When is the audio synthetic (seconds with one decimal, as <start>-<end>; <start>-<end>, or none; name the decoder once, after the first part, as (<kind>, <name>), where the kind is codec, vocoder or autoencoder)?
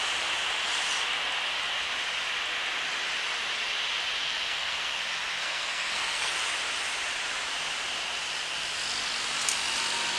4.2-5.0 (codec, SNAC); 5.4-6.3